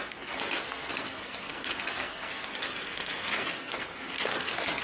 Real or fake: fake